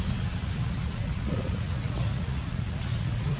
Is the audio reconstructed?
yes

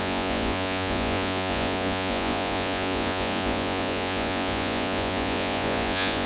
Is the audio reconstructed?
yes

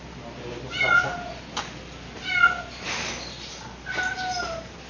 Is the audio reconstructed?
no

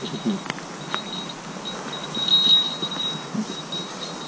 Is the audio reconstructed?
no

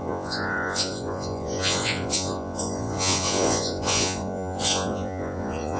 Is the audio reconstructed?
yes